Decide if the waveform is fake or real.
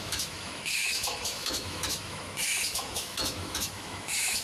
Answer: fake